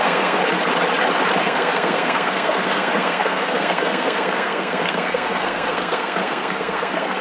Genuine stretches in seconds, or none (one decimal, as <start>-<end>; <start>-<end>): 0.4-1.4